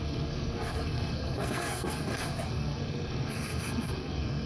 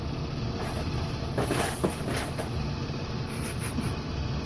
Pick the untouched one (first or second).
second